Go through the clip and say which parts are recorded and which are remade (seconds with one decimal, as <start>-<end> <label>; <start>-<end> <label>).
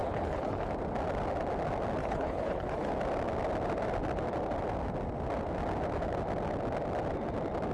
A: 0.0-0.7 remade; 0.7-2.0 recorded; 2.0-2.9 remade; 2.9-7.7 recorded